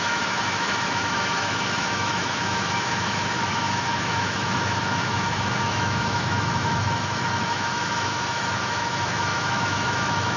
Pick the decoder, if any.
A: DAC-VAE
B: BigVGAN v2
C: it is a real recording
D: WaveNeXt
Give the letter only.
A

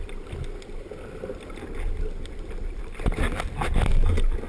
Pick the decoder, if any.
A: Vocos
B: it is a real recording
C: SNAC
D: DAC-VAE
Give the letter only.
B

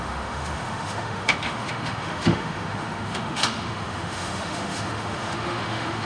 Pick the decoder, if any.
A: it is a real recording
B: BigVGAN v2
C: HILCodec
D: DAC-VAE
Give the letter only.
D